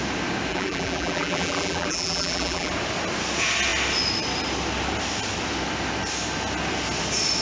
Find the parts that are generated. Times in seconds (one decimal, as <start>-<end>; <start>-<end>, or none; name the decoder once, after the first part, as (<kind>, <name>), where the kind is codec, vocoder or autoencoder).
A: 0.5-2.7 (vocoder, BigVGAN v2)